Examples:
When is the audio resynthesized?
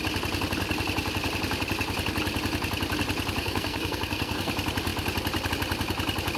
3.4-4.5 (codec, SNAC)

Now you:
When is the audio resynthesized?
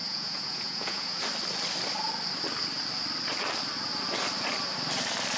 0.0-1.2 (vocoder, Vocos)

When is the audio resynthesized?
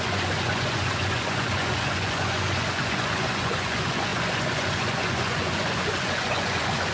0.0-6.9 (vocoder, Vocos)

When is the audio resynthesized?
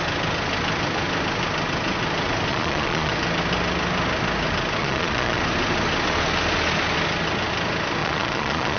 2.5-3.1 (vocoder, Vocos); 4.8-5.4; 8.0-8.8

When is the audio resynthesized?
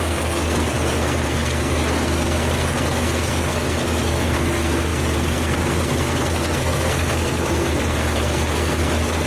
0.0-9.3 (codec, SNAC)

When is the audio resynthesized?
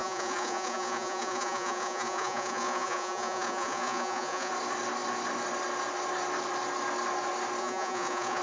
0.0-4.5 (vocoder, Vocos); 7.6-8.4